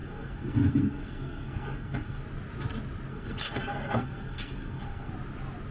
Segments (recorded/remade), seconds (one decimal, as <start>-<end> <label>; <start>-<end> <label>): 0.0-2.2 remade; 2.2-3.1 recorded; 3.1-5.1 remade; 5.1-5.7 recorded